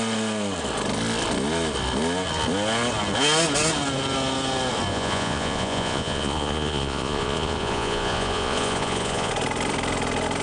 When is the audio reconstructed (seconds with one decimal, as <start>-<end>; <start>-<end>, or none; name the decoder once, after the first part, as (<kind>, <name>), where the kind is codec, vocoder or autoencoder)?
4.9-9.3 (vocoder, Vocos)